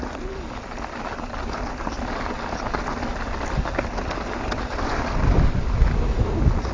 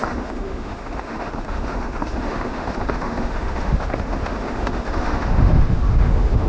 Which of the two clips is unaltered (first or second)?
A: first